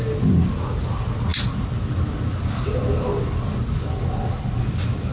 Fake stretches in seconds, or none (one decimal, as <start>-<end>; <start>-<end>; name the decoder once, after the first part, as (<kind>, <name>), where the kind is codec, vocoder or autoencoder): none

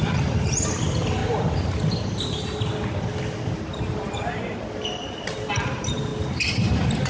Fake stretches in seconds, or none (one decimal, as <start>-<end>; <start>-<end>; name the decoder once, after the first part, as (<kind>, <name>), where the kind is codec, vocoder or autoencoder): 0.0-1.2 (vocoder, BigVGAN v2); 5.5-6.1

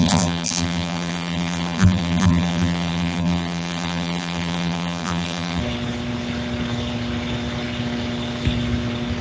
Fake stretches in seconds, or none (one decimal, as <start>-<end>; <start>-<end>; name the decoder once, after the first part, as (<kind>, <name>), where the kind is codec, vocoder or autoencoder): 0.0-5.6 (vocoder, BigVGAN v2)

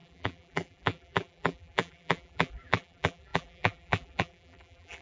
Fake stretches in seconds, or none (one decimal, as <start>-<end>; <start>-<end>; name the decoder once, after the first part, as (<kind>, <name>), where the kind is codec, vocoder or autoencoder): 0.0-5.0 (vocoder, BigVGAN v2)

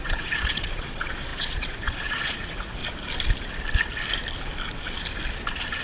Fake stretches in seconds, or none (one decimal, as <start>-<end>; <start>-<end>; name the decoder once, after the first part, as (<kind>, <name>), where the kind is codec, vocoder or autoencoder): 0.0-2.8 (vocoder, Vocos)

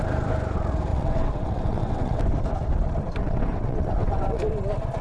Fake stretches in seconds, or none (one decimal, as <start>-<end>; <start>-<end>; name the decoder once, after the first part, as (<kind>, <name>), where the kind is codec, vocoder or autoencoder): 0.9-2.2 (vocoder, WaveNeXt); 3.2-4.4